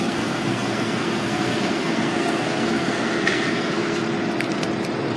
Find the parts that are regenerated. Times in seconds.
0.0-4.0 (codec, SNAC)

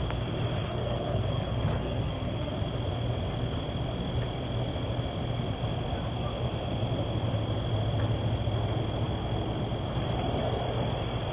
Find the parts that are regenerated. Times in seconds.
0.6-2.5 (codec, SNAC)

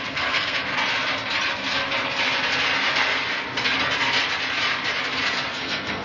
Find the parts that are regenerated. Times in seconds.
0.0-0.7 (codec, SNAC); 1.5-1.9; 5.5-6.0

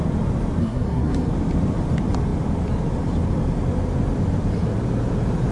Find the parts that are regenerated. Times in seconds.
0.6-1.3 (codec, SNAC)

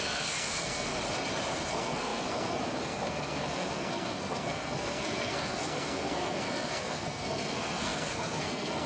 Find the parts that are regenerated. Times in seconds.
0.0-0.9 (codec, SNAC); 1.7-8.9

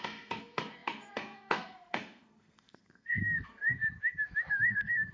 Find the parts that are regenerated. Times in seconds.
0.0-3.8 (codec, SNAC); 4.5-5.1

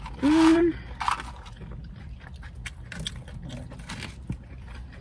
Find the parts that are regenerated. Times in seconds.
none